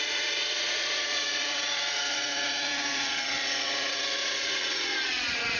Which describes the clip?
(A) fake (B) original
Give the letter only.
A